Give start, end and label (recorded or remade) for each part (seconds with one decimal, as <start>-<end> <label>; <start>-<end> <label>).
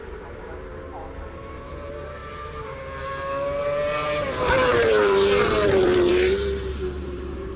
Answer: 0.0-7.6 remade